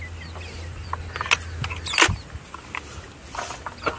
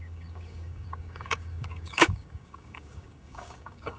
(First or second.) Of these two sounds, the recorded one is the first